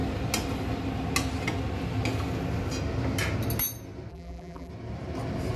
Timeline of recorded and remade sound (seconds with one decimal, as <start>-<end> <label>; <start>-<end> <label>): 0.0-4.1 recorded; 4.1-4.7 remade; 4.7-5.6 recorded